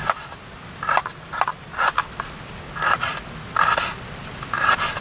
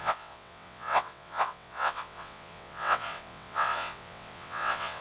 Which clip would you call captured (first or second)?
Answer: first